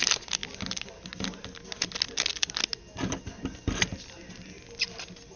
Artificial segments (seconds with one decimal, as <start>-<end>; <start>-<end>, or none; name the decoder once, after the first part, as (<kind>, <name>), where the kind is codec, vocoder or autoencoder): none